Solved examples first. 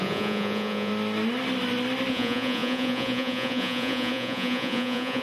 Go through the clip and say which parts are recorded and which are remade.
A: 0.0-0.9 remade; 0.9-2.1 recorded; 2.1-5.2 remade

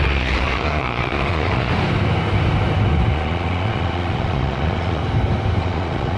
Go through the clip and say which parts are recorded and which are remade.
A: 0.0-1.7 remade; 1.7-3.1 recorded; 3.1-5.0 remade; 5.0-5.6 recorded; 5.6-6.2 remade

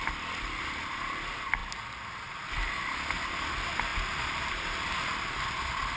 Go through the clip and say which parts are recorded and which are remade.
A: 0.0-6.0 recorded

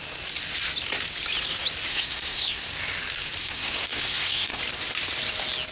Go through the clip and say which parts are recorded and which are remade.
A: 0.0-1.9 recorded; 1.9-2.7 remade; 2.7-3.4 recorded; 3.4-4.6 remade; 4.6-5.7 recorded

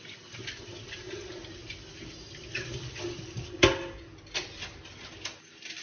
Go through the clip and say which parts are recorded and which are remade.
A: 0.0-5.8 recorded

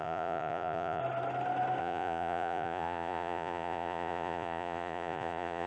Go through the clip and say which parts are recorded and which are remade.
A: 0.0-1.0 remade; 1.0-1.8 recorded; 1.8-5.7 remade

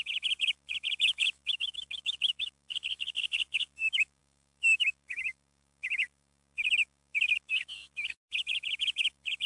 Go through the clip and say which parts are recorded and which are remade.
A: 0.0-9.5 remade

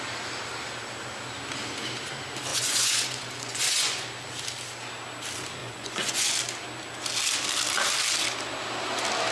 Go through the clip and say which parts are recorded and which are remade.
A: 0.0-2.5 recorded; 2.5-4.1 remade; 4.1-5.6 recorded; 5.6-6.3 remade; 6.3-9.3 recorded